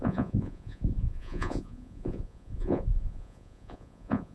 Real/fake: fake